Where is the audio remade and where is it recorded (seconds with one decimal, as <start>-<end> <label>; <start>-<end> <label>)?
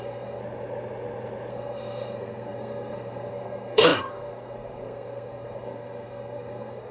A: 0.0-0.4 remade; 0.4-1.5 recorded; 1.5-6.9 remade